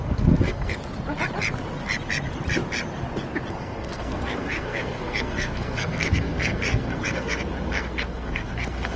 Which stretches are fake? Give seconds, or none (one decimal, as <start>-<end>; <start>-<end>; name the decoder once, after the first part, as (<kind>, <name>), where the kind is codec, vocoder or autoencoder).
0.0-0.8 (codec, SNAC); 3.5-9.0